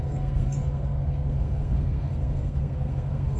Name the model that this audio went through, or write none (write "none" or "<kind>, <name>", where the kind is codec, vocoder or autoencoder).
codec, SNAC